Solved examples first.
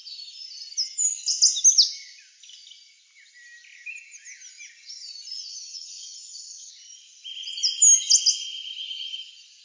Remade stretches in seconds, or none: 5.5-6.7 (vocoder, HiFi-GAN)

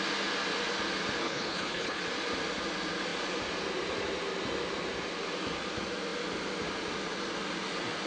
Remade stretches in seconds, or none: 1.2-2.0 (codec, HILCodec)

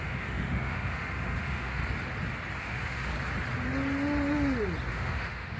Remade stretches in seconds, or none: 0.0-1.8 (autoencoder, DAC-VAE); 2.6-3.1; 4.9-5.6